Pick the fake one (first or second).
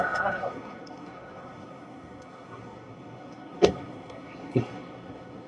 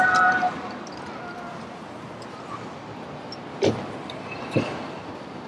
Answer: first